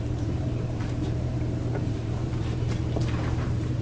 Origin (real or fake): fake